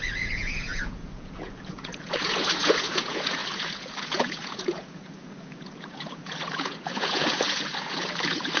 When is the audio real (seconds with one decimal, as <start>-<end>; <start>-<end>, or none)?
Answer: none